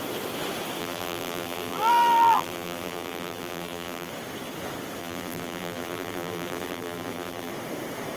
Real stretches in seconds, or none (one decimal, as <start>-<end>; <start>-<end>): 0.0-0.8; 4.1-5.0; 7.5-8.2